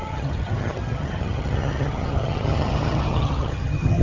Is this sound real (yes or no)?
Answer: no